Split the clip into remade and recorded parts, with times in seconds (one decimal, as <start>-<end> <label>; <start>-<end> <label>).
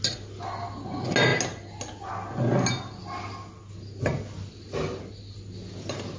0.0-6.2 recorded